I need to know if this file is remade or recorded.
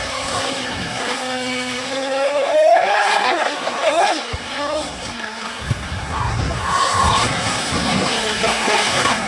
remade